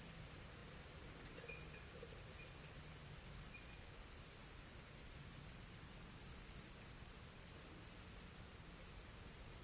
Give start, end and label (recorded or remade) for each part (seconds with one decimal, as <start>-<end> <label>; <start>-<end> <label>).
0.0-9.6 recorded

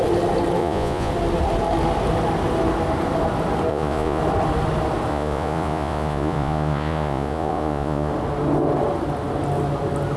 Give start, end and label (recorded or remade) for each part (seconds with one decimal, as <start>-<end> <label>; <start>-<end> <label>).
0.0-0.6 recorded; 0.6-1.1 remade; 1.1-3.7 recorded; 3.7-4.2 remade; 4.2-5.1 recorded; 5.1-8.1 remade; 8.1-10.2 recorded

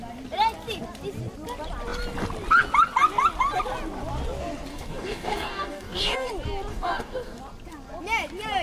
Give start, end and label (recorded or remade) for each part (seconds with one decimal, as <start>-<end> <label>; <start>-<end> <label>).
0.0-4.7 recorded; 4.7-6.3 remade; 6.3-6.7 recorded; 6.7-7.4 remade; 7.4-8.6 recorded

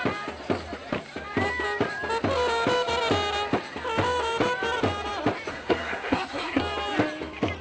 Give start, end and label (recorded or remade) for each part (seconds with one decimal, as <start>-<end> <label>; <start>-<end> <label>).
0.0-5.5 recorded; 5.5-6.6 remade; 6.6-7.6 recorded

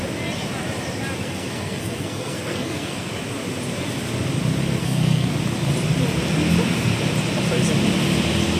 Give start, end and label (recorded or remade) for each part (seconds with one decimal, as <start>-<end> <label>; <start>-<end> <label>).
0.0-1.2 recorded; 1.2-3.1 remade; 3.1-4.8 recorded; 4.8-5.3 remade; 5.3-8.6 recorded

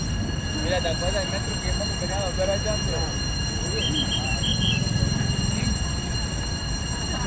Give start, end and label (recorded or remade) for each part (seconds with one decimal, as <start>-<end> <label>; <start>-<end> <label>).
0.0-4.5 recorded; 4.5-5.0 remade; 5.0-7.3 recorded

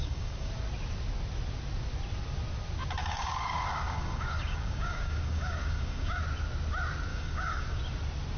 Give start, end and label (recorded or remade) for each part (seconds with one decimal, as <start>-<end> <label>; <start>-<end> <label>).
0.0-0.5 remade; 0.5-3.0 recorded; 3.0-6.2 remade; 6.2-7.1 recorded; 7.1-7.8 remade; 7.8-8.4 recorded